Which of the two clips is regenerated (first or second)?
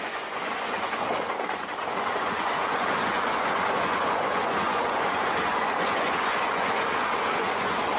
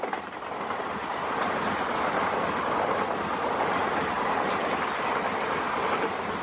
first